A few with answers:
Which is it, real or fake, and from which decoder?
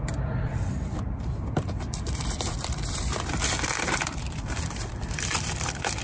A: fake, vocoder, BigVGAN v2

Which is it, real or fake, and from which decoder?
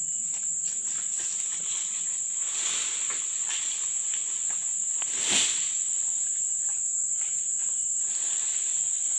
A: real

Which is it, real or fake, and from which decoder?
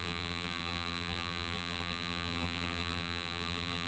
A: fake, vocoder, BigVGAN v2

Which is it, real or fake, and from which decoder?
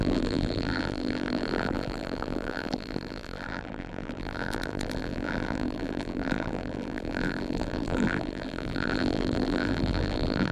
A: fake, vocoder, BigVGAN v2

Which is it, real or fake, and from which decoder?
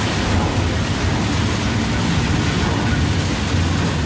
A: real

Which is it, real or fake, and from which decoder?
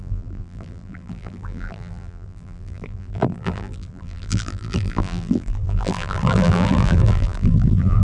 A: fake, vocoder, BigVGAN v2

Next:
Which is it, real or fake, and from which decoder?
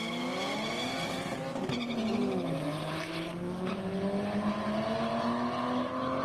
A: real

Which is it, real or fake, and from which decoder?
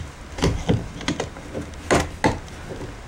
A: real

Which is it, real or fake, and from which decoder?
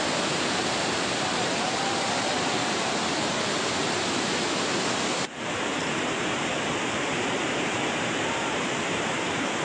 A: fake, vocoder, BigVGAN v2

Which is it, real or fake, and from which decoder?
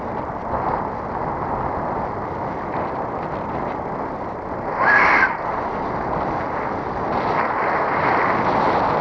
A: real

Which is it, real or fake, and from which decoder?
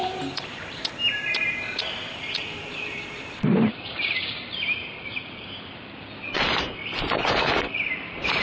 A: fake, vocoder, BigVGAN v2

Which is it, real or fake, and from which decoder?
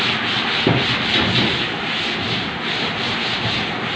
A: real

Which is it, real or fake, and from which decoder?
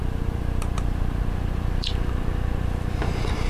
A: fake, vocoder, BigVGAN v2